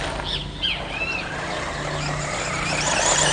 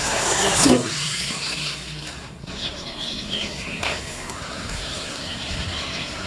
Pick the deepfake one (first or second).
second